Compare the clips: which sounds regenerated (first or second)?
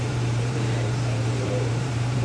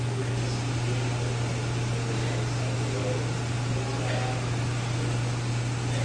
first